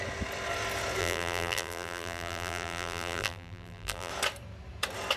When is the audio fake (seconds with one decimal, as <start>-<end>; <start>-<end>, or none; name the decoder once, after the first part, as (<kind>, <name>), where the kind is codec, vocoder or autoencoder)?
1.0-4.1 (vocoder, BigVGAN v2)